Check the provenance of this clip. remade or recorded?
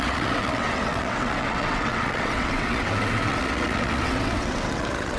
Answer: remade